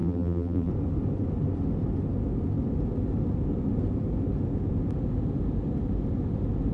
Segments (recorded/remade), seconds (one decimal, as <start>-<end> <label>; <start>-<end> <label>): 0.0-0.7 remade; 0.7-6.7 recorded